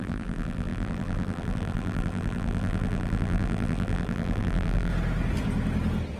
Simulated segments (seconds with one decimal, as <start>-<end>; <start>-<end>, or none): 0.0-4.9